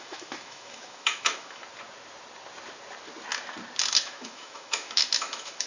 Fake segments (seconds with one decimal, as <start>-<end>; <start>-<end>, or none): 0.0-1.6; 3.8-5.7